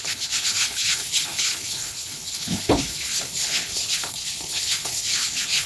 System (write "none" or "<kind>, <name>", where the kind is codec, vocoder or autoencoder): codec, HILCodec